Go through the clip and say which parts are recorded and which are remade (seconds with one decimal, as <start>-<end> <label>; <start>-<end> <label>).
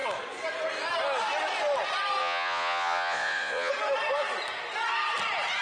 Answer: 0.0-2.2 recorded; 2.2-3.7 remade; 3.7-5.6 recorded